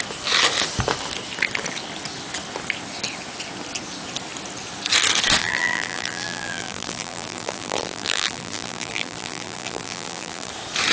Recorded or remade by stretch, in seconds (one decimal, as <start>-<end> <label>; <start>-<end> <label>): 0.0-5.4 recorded; 5.4-10.5 remade; 10.5-10.9 recorded